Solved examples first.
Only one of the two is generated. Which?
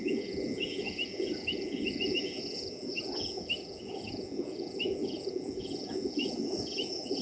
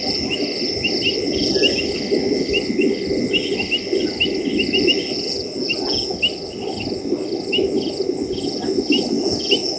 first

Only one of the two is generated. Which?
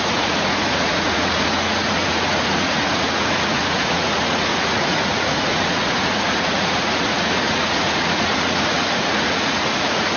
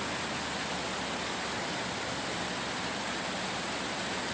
first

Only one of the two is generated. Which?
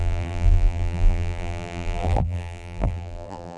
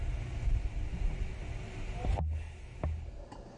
first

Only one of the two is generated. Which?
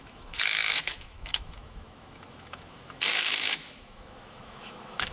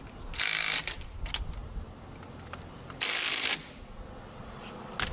first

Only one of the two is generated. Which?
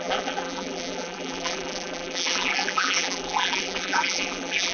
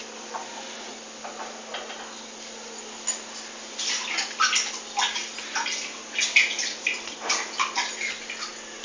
first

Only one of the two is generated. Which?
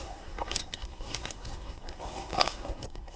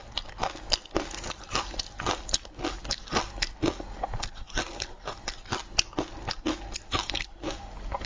first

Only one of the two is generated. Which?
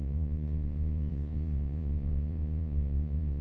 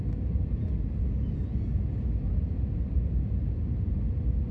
first